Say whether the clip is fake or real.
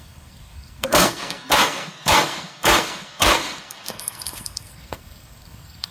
fake